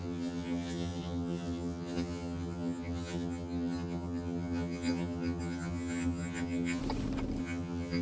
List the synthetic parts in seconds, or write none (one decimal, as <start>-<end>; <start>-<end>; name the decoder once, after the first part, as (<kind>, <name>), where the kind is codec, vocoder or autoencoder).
0.0-6.8 (vocoder, HiFi-GAN); 7.4-8.0

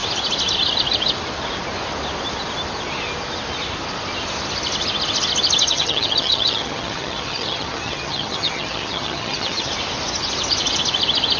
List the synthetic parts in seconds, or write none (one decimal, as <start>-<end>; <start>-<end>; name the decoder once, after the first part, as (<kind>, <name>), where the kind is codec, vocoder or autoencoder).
5.7-9.7 (vocoder, HiFi-GAN)

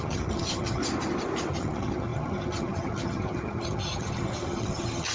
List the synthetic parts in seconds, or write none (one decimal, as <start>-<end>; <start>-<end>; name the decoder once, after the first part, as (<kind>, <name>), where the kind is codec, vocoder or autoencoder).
0.0-0.8 (vocoder, HiFi-GAN); 1.5-5.1

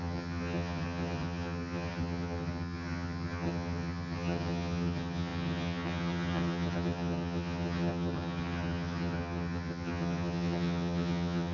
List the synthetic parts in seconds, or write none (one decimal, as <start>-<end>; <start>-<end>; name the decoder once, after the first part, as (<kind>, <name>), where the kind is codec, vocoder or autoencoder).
0.0-11.5 (vocoder, HiFi-GAN)